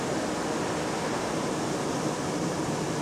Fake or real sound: real